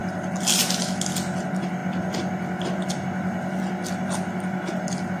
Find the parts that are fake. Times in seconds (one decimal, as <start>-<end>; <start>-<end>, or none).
none